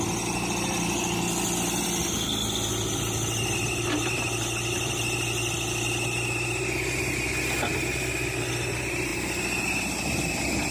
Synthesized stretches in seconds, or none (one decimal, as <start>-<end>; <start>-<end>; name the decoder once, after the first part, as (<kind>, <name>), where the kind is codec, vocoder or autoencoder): none